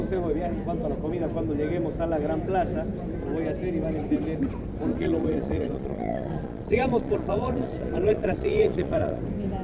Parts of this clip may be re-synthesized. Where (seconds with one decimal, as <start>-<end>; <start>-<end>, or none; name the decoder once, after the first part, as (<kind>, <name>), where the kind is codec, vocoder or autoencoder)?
4.9-9.2 (vocoder, Vocos)